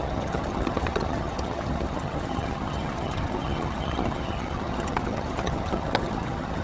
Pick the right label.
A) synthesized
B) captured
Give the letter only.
A